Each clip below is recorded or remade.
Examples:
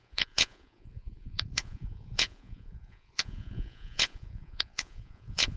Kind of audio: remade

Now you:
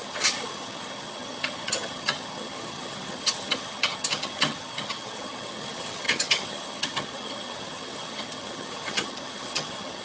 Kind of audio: remade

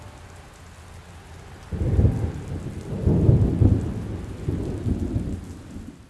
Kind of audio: recorded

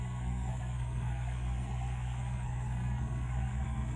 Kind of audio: remade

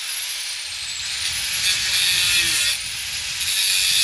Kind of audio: recorded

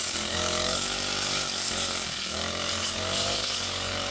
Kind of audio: remade